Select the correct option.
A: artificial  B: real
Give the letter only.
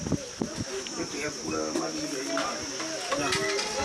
B